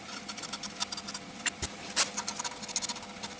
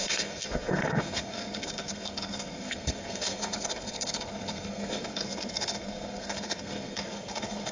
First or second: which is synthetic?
second